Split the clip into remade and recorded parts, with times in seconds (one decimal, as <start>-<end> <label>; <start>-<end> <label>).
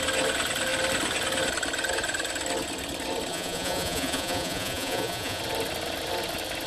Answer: 0.0-3.3 recorded; 3.3-5.4 remade; 5.4-6.7 recorded